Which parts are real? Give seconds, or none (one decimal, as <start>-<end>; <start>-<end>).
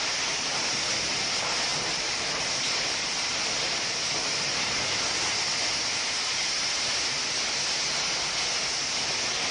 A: 0.0-1.7; 2.4-9.5